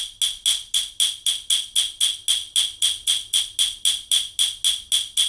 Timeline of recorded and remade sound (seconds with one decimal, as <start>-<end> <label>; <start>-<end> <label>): 0.0-5.3 recorded